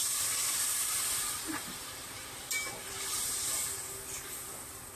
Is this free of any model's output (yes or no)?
yes